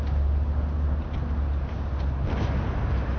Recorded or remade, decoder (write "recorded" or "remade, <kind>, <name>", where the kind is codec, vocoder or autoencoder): recorded